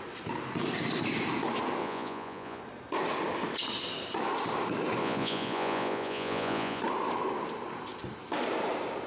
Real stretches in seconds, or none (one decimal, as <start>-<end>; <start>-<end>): 0.0-1.8; 2.6-5.0; 6.8-9.1